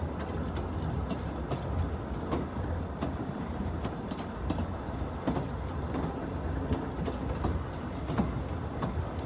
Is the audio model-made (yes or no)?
no